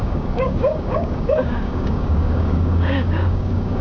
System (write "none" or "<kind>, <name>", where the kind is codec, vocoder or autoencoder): codec, DAC